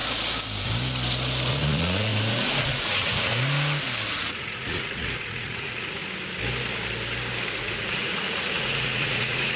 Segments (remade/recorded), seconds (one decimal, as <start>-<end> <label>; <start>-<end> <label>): 0.0-1.5 recorded; 1.5-2.1 remade; 2.1-2.6 recorded; 2.6-3.3 remade; 3.3-4.1 recorded; 4.1-6.0 remade; 6.0-7.6 recorded; 7.6-9.6 remade